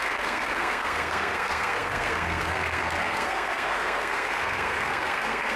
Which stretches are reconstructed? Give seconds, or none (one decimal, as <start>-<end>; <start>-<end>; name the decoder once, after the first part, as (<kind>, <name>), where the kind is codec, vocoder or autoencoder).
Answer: 0.0-5.6 (codec, SNAC)

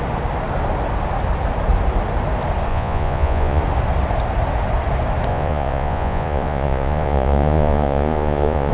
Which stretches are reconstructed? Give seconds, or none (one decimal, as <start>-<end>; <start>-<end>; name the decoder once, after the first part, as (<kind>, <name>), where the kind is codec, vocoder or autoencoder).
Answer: 2.7-3.6 (vocoder, Vocos); 5.3-8.7

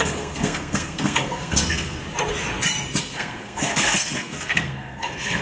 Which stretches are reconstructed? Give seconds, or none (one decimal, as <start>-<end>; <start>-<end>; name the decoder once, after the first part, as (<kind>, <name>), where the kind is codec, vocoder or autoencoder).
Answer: 0.0-2.0 (codec, SNAC); 3.0-5.4

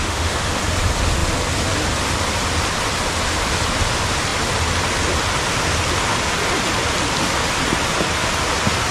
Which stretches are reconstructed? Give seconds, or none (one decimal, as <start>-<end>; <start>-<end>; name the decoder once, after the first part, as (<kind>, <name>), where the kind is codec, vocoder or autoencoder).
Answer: 0.0-0.6 (autoencoder, DAC-VAE)

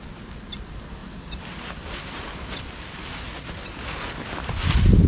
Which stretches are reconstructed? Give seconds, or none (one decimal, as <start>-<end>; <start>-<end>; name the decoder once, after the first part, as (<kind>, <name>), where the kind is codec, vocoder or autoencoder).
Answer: none

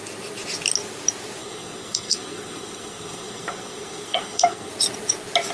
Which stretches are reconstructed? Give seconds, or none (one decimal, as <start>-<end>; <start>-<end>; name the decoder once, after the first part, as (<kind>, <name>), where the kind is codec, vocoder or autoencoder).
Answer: 1.4-4.7 (codec, SNAC)

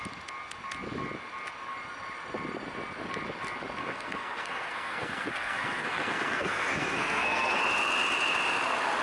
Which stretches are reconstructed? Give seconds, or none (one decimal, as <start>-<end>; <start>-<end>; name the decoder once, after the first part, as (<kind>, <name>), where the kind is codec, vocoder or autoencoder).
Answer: 3.8-7.6 (codec, SNAC)

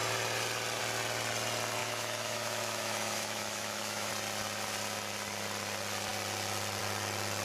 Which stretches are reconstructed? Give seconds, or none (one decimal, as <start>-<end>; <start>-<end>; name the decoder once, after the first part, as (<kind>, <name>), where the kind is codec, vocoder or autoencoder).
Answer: 1.8-4.1 (autoencoder, DAC-VAE)